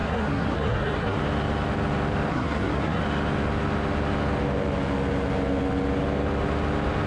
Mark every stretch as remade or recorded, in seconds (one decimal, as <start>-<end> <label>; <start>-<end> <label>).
0.0-1.2 remade; 1.2-2.3 recorded; 2.3-3.0 remade; 3.0-7.1 recorded